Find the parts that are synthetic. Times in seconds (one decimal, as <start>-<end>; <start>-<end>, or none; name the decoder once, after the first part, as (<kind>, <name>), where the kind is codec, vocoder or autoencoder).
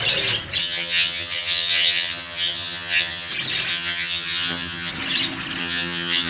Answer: 0.6-3.3 (vocoder, HiFi-GAN); 3.7-4.9; 5.6-6.3